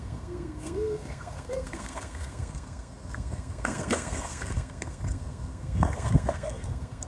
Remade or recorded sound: remade